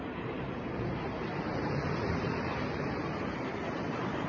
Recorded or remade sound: remade